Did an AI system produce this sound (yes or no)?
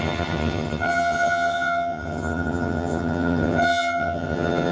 yes